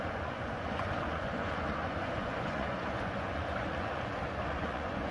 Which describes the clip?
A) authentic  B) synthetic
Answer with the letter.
B